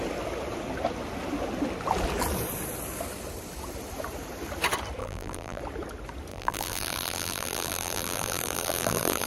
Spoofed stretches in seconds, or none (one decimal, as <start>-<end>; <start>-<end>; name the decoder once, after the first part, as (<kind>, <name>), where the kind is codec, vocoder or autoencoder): 5.0-5.6 (vocoder, BigVGAN v2); 6.3-9.3